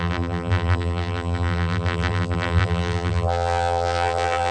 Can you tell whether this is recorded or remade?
remade